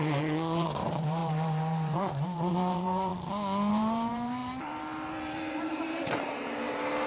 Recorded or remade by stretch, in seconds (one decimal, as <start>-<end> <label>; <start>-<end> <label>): 0.0-3.1 remade; 3.1-3.7 recorded; 3.7-7.1 remade